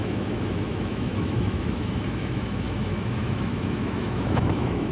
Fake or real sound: fake